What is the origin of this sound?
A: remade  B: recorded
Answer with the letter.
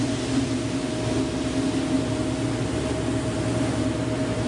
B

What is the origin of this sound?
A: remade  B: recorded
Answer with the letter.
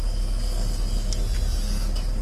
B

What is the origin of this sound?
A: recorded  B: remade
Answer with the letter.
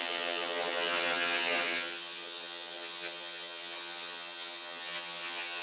B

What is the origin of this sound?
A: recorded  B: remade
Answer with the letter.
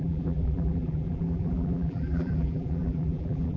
B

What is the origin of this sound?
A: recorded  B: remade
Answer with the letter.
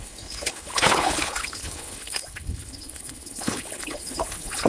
B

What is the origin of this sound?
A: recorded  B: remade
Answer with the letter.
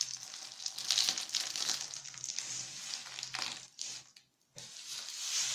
A